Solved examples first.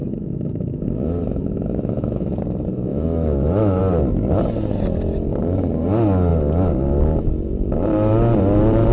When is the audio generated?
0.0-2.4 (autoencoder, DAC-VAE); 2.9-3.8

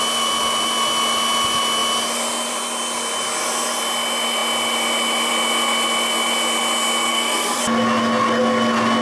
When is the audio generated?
7.1-7.6 (codec, SNAC)

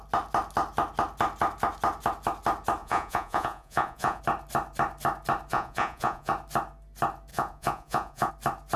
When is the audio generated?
2.8-4.2 (vocoder, Vocos); 5.5-6.3; 7.3-8.3

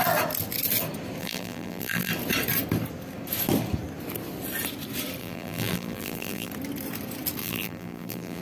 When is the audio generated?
1.2-2.1 (vocoder, BigVGAN v2); 5.2-6.5; 7.4-8.4

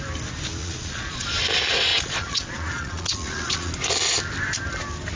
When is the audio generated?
0.6-1.4 (vocoder, Vocos); 1.9-3.7

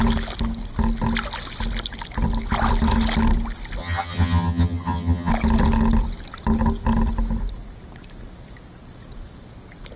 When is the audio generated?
3.8-5.3 (vocoder, HiFi-GAN)

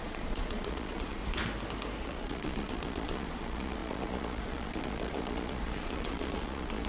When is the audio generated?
0.0-1.2 (vocoder, Vocos); 2.0-6.9